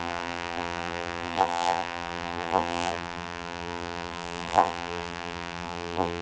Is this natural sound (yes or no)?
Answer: no